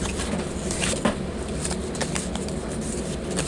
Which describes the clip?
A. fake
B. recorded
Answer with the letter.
A